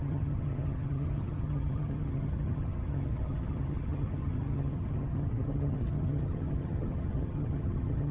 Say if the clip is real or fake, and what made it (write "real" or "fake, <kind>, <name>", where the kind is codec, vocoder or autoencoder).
fake, vocoder, HiFi-GAN